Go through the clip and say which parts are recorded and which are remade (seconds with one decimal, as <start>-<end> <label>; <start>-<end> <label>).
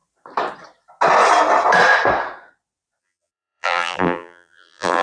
0.0-3.0 recorded; 3.0-5.0 remade